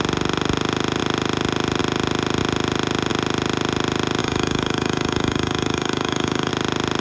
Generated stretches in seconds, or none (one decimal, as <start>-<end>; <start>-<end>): 4.2-6.5